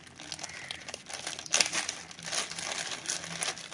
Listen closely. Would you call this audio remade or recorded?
recorded